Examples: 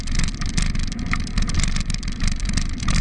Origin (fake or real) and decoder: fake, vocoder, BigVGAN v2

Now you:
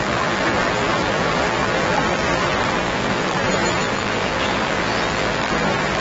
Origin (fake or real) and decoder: fake, vocoder, BigVGAN v2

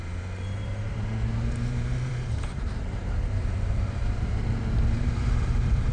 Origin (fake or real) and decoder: fake, vocoder, BigVGAN v2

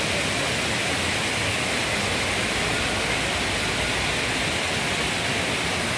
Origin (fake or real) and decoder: real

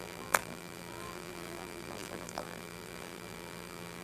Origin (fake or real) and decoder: fake, vocoder, BigVGAN v2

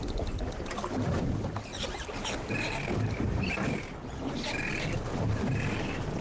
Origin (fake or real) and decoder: real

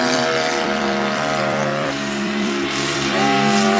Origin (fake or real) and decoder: fake, vocoder, BigVGAN v2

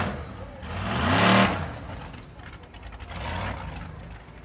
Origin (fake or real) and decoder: real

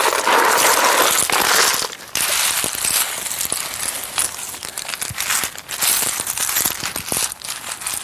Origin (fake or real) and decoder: real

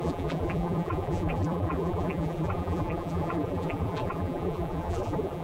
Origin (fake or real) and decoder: fake, vocoder, BigVGAN v2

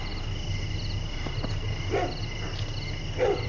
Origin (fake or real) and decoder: real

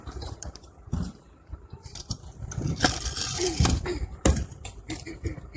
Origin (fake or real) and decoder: fake, vocoder, BigVGAN v2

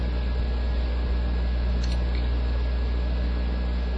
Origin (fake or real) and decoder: real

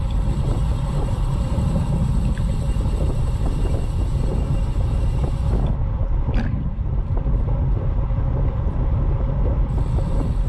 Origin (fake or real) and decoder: fake, vocoder, BigVGAN v2